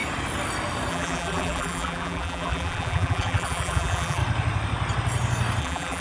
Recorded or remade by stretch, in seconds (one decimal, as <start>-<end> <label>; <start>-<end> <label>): 0.0-0.9 recorded; 0.9-4.2 remade; 4.2-5.6 recorded; 5.6-6.0 remade

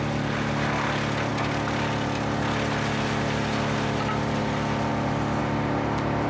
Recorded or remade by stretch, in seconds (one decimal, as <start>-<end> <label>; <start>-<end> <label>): 0.0-6.3 recorded